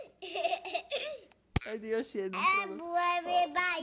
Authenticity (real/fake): real